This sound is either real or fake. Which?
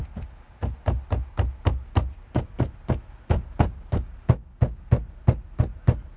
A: real